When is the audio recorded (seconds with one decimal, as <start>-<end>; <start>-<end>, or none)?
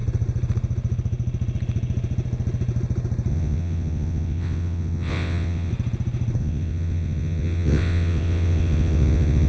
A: 0.0-3.3; 5.7-6.4